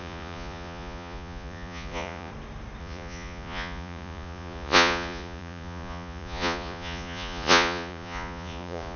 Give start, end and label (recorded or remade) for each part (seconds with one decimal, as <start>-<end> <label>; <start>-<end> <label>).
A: 0.0-2.3 remade; 2.3-2.8 recorded; 2.8-9.0 remade